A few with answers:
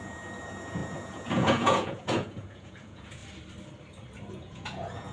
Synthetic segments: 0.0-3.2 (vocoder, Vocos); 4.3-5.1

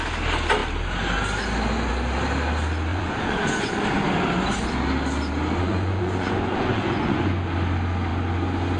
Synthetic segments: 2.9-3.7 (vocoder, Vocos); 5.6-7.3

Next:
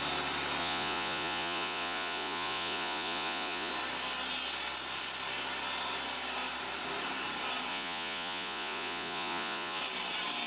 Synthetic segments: 0.6-3.7 (vocoder, Vocos); 7.7-9.8